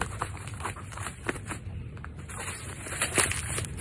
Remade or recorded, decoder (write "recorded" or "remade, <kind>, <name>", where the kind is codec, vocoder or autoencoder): remade, vocoder, BigVGAN v2